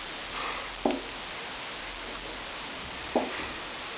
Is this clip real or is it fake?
real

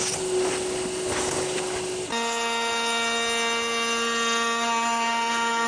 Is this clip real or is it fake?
real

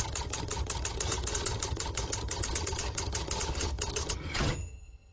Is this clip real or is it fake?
fake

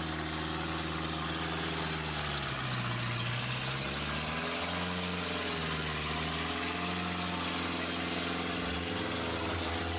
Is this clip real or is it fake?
real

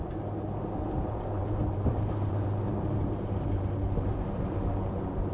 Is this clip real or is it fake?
fake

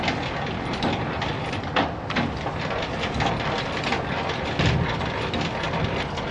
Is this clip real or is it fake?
real